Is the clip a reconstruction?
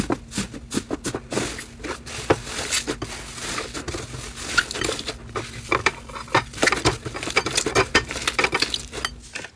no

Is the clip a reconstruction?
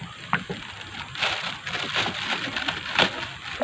no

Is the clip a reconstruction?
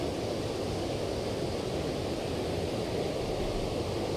no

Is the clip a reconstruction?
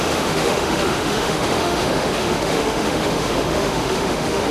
yes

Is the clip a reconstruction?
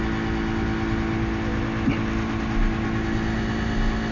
no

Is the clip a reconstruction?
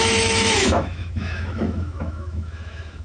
yes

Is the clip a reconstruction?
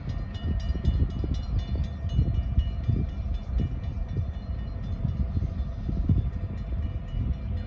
no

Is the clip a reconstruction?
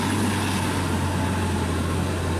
no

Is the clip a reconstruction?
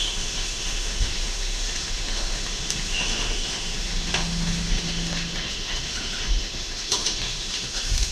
yes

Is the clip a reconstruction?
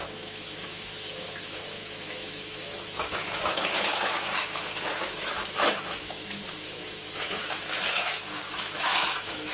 yes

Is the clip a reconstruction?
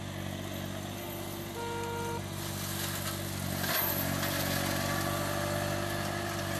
no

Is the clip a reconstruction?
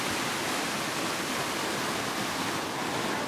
no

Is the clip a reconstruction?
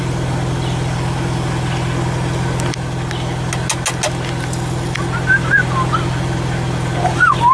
no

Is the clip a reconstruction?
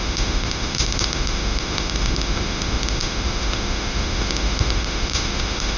yes